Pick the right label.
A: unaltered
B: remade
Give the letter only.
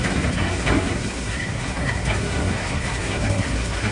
B